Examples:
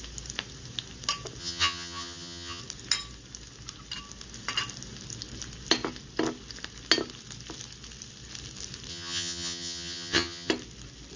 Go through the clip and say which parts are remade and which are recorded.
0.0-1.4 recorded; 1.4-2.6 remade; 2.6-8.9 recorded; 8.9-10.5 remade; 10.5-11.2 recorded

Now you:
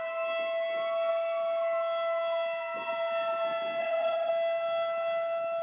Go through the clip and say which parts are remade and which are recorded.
0.0-3.8 recorded; 3.8-4.3 remade; 4.3-5.6 recorded

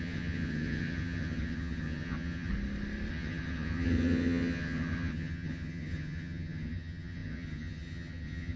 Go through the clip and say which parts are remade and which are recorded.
0.0-2.5 remade; 2.5-3.1 recorded; 3.1-8.6 remade

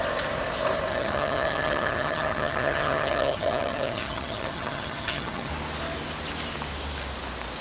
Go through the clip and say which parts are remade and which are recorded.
0.0-0.9 recorded; 0.9-5.5 remade; 5.5-7.6 recorded